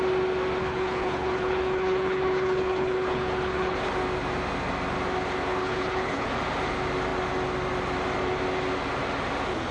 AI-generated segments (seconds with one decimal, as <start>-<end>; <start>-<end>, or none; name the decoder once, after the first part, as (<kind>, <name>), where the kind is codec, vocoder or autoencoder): 0.6-3.9 (codec, HILCodec); 5.5-6.3